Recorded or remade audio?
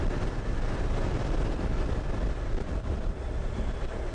recorded